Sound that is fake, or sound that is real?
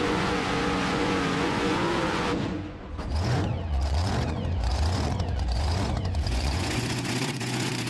fake